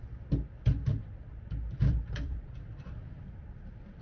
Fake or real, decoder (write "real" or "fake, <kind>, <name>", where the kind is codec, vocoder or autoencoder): fake, vocoder, BigVGAN v2